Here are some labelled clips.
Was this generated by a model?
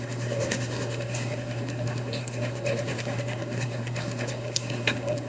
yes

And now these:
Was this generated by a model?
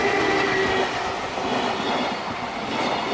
no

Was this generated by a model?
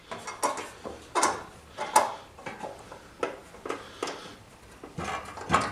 no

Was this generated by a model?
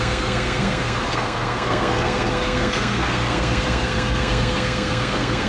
yes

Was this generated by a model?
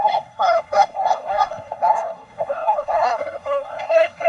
yes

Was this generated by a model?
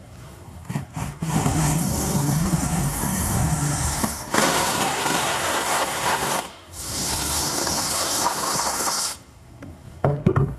yes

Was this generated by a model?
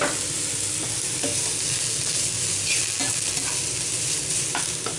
no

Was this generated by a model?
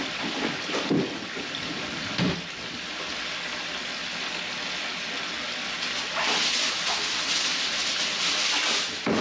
no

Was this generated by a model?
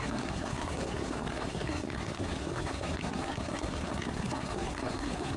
yes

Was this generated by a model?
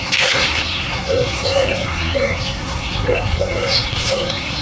yes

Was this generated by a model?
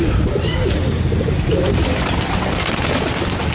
no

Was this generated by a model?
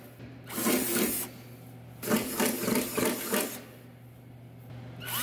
no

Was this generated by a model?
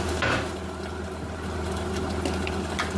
no